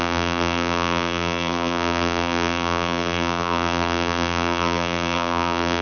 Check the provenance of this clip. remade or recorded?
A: remade